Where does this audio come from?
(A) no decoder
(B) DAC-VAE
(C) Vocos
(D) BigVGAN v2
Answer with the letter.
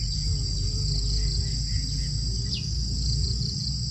A